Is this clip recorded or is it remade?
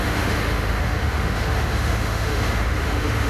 remade